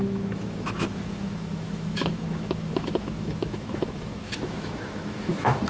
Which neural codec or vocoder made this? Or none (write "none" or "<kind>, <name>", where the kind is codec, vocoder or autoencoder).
autoencoder, DAC-VAE